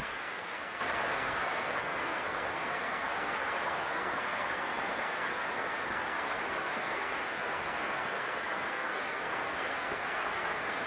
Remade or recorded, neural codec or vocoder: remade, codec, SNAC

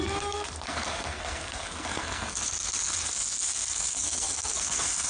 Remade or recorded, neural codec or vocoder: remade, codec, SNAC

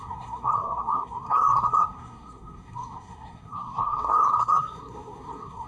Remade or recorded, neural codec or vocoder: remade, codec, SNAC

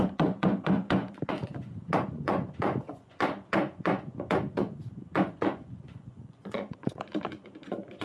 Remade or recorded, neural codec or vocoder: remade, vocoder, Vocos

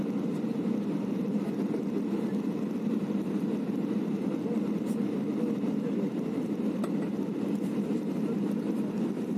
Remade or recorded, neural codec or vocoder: remade, vocoder, BigVGAN v2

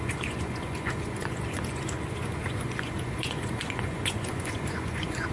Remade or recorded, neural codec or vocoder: remade, vocoder, Vocos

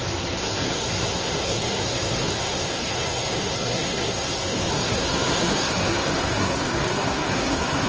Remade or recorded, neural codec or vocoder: remade, codec, SNAC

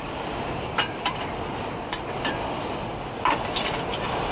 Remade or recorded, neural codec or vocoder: recorded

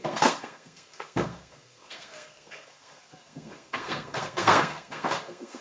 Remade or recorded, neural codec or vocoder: remade, codec, SNAC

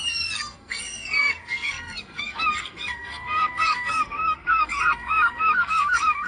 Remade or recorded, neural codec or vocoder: remade, codec, SNAC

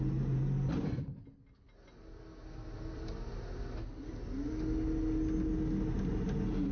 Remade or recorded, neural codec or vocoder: recorded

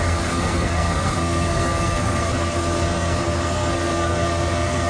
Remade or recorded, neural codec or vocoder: remade, codec, SNAC